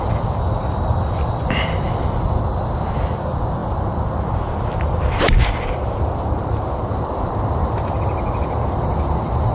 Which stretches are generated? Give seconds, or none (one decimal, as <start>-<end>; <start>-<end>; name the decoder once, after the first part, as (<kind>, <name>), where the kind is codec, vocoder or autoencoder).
none